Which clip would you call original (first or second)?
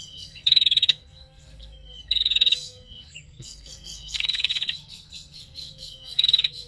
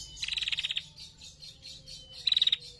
second